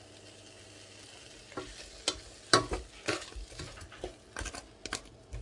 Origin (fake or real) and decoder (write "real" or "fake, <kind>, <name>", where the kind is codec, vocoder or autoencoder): real